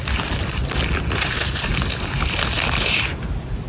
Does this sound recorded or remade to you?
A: recorded